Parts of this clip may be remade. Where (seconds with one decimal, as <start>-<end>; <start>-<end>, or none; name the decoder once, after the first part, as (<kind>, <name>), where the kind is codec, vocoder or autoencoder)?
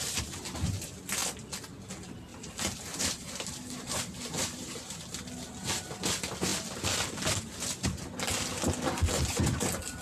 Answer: 2.3-5.0 (vocoder, BigVGAN v2)